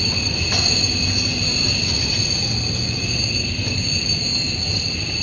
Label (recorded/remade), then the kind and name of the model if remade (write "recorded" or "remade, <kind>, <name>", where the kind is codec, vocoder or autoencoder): recorded